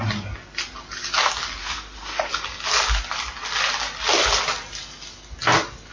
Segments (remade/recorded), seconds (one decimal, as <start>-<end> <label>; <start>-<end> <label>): 0.0-1.6 recorded; 1.6-2.3 remade; 2.3-5.9 recorded